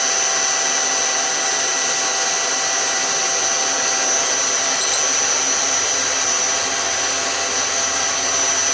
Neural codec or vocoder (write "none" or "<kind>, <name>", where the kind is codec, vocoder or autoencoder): none